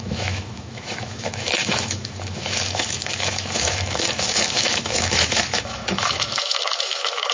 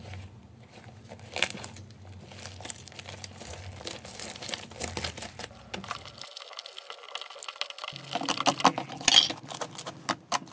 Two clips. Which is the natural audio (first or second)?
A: second